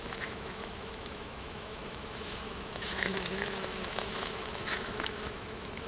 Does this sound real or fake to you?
fake